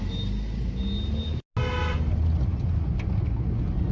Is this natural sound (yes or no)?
yes